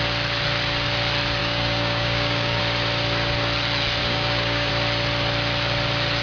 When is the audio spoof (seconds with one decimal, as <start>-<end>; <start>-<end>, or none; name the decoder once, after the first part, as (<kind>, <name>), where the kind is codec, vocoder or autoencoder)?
1.4-2.6 (codec, DAC); 4.0-4.7